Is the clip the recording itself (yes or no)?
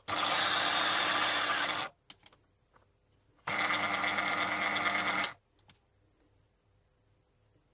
yes